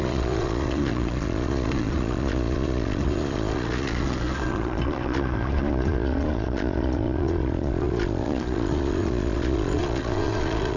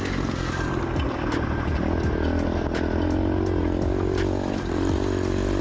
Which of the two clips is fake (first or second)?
first